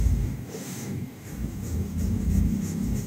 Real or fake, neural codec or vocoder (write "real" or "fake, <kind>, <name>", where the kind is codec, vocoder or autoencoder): fake, codec, DAC